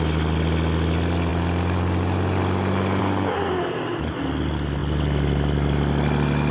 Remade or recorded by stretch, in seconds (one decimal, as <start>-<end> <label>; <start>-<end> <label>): 0.0-6.5 recorded